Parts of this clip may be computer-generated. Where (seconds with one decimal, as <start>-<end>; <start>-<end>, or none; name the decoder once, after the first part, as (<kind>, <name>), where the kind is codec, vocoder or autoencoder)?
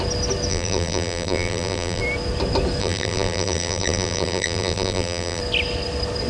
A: 0.5-2.0 (vocoder, BigVGAN v2); 2.8-5.4